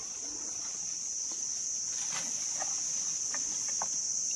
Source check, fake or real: real